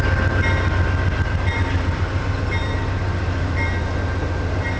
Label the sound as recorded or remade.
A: recorded